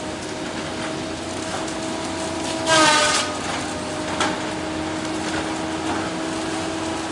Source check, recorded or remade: recorded